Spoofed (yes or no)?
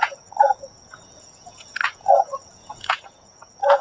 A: yes